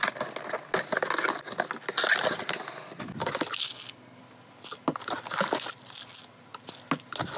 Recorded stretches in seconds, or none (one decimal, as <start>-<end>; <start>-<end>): 0.0-3.6; 4.2-7.4

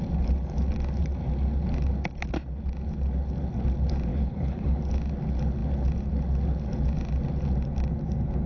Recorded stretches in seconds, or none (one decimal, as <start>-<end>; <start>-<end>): 0.0-4.1; 4.8-8.5

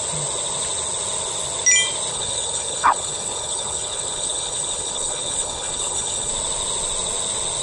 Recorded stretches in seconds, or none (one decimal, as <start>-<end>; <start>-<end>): 0.0-2.1; 6.3-7.6

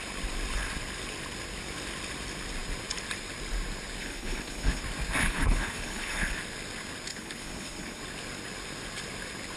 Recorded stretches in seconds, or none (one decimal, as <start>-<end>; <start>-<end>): 0.0-4.0; 4.8-5.2; 6.4-7.1; 8.0-9.6

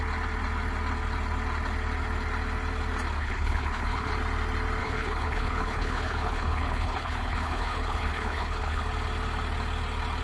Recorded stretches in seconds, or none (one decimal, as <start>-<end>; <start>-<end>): 0.0-3.2; 4.1-4.8; 8.8-10.2